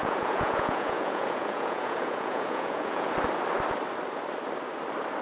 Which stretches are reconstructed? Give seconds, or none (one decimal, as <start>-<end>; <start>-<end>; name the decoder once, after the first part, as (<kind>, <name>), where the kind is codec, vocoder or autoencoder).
0.0-3.1 (vocoder, Vocos)